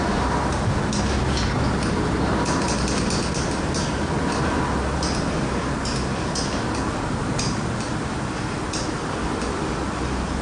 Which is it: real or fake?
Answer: fake